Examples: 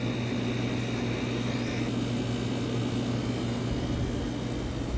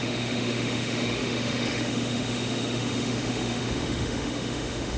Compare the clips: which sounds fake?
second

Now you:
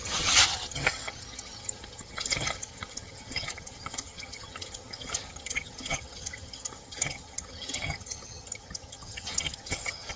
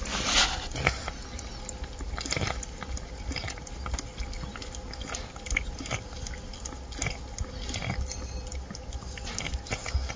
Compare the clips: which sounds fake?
first